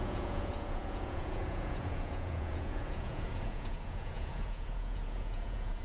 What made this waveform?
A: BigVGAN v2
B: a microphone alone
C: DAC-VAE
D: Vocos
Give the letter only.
D